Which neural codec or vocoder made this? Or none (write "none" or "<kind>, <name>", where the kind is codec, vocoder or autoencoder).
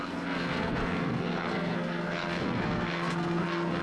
codec, SNAC